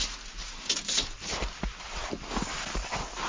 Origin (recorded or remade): recorded